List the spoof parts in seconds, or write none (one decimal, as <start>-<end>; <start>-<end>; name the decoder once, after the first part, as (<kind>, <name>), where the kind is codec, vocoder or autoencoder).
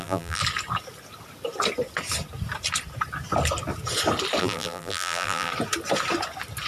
0.0-0.4 (vocoder, BigVGAN v2); 4.4-5.5